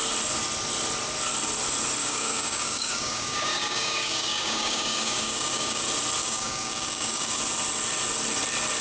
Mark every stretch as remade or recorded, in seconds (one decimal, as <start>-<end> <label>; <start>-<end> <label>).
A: 0.0-2.0 recorded; 2.0-5.8 remade; 5.8-6.2 recorded; 6.2-7.4 remade; 7.4-8.8 recorded